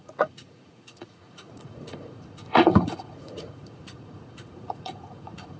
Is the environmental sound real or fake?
fake